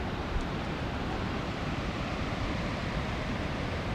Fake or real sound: fake